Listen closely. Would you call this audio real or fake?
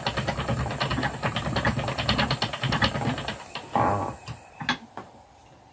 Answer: real